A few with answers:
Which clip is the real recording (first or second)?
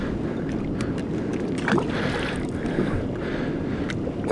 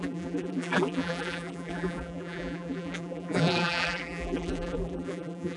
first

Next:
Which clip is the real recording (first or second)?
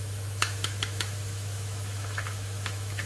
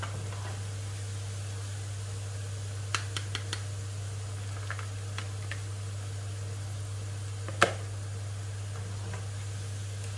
second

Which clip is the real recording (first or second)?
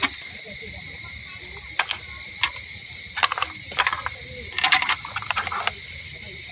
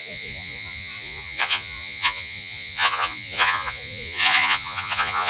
first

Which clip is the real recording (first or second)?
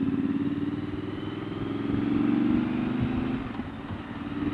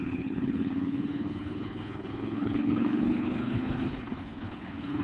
first